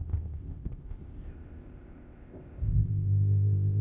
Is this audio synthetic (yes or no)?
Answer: yes